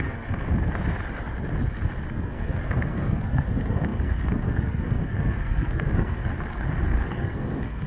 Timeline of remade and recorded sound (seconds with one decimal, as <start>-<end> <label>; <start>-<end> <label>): 0.0-0.5 remade; 0.5-2.1 recorded; 2.1-6.3 remade; 6.3-6.8 recorded; 6.8-7.9 remade